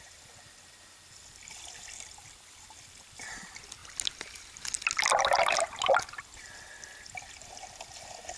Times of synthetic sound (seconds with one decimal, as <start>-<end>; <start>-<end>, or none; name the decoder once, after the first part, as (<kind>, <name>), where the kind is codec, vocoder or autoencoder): none